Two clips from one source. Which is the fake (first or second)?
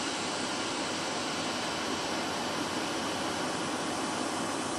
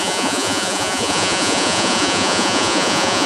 second